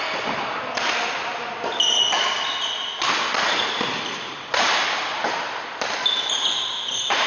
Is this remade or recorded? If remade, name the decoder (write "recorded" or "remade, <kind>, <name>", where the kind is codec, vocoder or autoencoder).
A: recorded